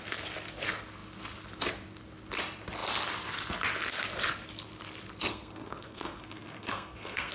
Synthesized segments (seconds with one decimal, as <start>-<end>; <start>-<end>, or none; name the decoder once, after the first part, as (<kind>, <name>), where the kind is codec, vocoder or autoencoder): 5.3-7.3 (codec, SNAC)